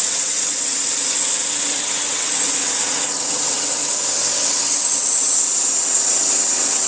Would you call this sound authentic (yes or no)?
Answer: no